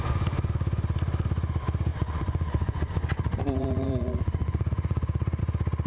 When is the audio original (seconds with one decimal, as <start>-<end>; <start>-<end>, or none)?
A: 0.0-1.9; 5.4-5.9